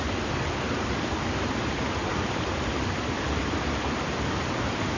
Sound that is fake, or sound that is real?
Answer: real